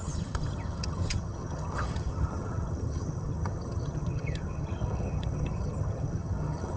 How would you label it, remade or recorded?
remade